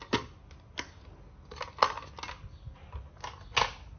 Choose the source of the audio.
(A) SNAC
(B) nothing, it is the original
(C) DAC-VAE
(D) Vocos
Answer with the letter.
B